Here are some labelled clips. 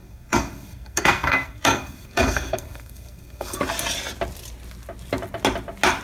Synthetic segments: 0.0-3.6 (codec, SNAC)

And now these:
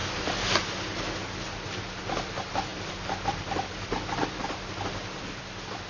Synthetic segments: none